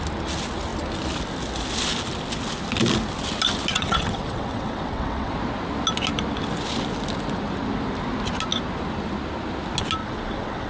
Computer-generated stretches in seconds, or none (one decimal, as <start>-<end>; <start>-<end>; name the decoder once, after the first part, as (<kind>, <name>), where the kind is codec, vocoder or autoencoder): 3.7-5.3 (vocoder, WaveNeXt); 10.0-10.7